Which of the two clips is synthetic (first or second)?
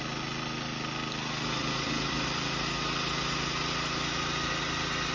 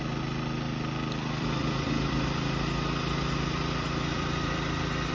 second